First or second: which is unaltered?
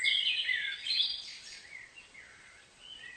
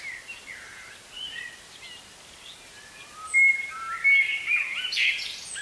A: second